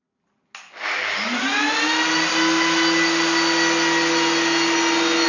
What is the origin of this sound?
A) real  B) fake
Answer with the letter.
A